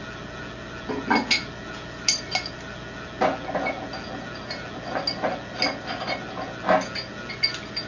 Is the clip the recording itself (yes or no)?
yes